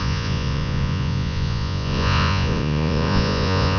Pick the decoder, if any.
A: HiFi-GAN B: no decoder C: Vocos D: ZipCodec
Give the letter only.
C